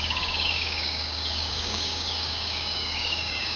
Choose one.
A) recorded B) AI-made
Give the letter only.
B